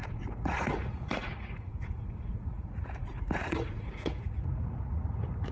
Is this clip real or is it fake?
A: fake